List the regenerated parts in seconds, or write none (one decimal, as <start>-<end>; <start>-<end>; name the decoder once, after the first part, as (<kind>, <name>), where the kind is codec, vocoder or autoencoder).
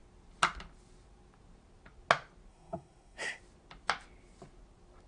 2.5-3.4 (codec, SNAC)